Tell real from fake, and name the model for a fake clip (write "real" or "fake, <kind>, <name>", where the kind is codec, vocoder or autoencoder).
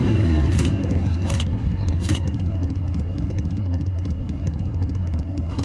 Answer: fake, codec, SNAC